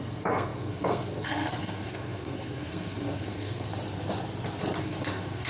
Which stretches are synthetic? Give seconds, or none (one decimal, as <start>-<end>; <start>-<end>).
0.0-3.7; 4.8-5.5